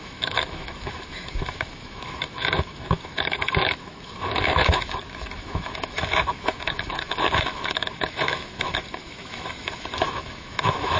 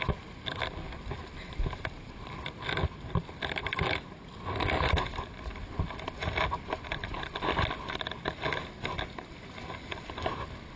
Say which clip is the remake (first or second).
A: first